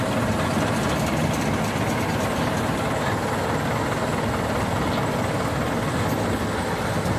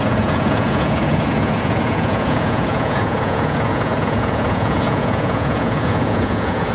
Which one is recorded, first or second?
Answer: first